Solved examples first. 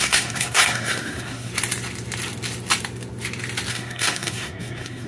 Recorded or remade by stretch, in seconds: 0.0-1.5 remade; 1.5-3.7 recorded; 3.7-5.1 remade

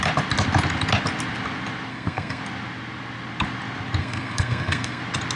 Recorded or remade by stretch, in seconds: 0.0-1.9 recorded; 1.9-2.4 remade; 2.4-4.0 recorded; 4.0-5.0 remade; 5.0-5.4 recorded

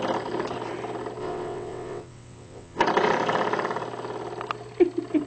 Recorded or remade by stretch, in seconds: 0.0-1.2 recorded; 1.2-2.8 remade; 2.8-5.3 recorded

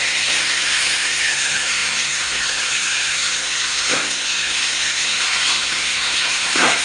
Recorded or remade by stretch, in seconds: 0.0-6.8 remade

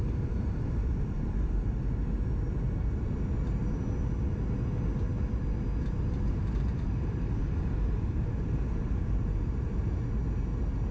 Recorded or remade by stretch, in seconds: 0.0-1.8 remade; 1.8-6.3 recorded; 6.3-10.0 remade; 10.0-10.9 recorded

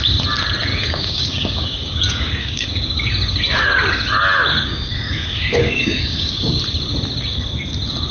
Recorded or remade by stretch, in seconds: 0.0-0.7 recorded; 0.7-3.1 remade; 3.1-4.7 recorded; 4.7-6.6 remade; 6.6-8.1 recorded

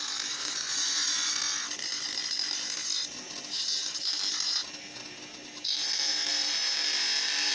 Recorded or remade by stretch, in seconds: 0.0-0.4 recorded; 0.4-1.3 remade; 1.3-7.5 recorded

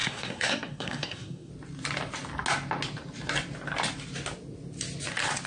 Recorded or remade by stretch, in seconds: 0.0-1.5 remade; 1.5-5.5 recorded